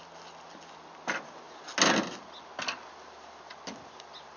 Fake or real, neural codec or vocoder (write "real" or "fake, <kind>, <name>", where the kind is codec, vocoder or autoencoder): real